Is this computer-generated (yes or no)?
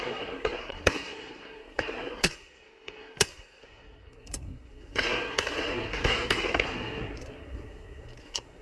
yes